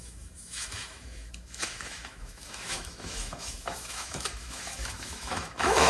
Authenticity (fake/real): fake